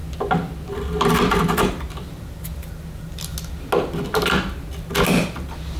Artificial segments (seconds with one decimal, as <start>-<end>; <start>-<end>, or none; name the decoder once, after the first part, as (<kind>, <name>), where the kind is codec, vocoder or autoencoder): none